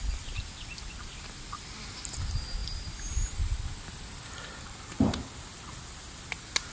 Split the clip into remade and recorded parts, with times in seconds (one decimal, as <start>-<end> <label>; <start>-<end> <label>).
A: 0.0-6.7 recorded